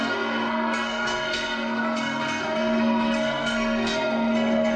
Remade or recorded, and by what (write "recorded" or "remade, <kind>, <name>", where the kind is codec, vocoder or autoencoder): remade, codec, SNAC